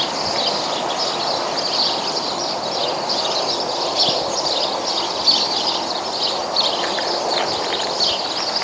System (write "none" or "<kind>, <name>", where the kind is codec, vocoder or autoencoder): none